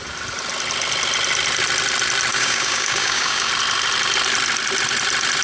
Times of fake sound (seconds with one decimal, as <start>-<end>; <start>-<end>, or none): 2.3-3.5